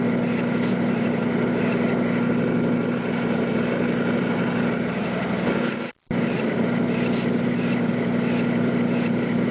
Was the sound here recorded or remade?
recorded